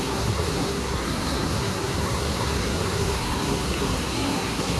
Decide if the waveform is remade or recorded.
remade